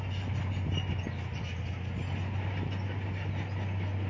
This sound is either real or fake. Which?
real